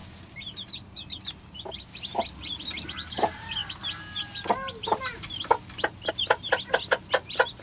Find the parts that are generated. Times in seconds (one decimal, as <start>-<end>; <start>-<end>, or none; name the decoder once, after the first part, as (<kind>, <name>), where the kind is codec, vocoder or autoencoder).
none